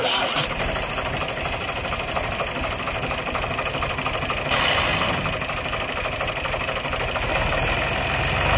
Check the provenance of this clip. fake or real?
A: real